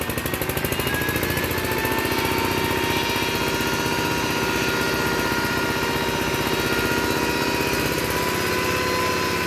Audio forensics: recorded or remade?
recorded